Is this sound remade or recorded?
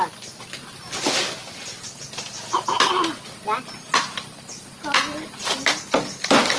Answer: recorded